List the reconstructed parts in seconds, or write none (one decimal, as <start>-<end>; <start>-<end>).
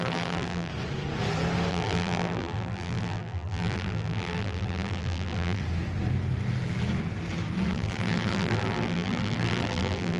0.0-0.7; 1.7-5.6; 7.7-10.2